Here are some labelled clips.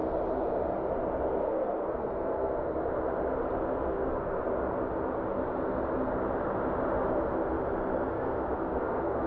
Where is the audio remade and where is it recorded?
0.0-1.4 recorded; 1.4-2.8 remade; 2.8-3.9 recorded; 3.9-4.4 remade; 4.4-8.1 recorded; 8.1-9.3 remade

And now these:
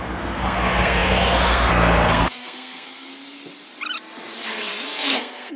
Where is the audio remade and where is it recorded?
0.0-3.1 remade; 3.1-4.5 recorded; 4.5-5.6 remade

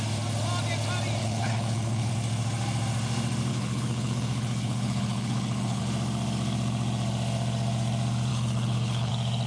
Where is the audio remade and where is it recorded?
0.0-1.2 recorded; 1.2-2.1 remade; 2.1-3.5 recorded; 3.5-5.8 remade; 5.8-8.3 recorded; 8.3-9.1 remade; 9.1-9.5 recorded

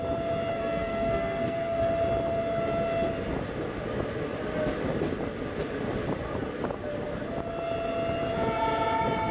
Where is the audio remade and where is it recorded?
0.0-0.5 recorded; 0.5-1.9 remade; 1.9-9.3 recorded

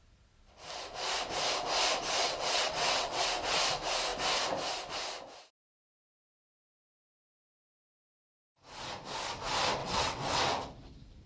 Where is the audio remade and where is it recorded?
0.0-2.2 recorded; 2.2-3.2 remade; 3.2-9.8 recorded; 9.8-10.4 remade; 10.4-11.3 recorded

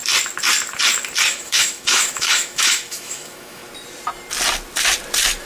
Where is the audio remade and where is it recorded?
0.0-1.3 recorded; 1.3-3.6 remade; 3.6-5.5 recorded